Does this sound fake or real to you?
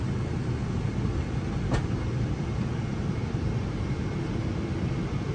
real